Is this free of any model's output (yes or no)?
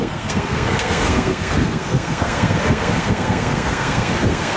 no